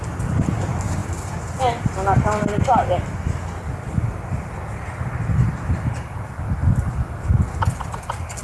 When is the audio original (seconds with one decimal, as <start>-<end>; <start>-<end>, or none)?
0.0-8.4